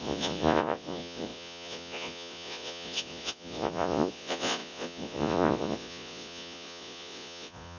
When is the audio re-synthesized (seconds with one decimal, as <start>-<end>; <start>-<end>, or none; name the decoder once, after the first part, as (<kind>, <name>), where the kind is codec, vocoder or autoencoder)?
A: 0.0-7.8 (vocoder, Vocos)